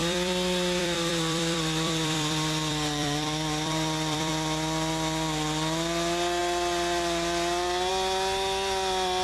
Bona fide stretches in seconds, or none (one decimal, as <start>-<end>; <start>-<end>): 4.3-9.2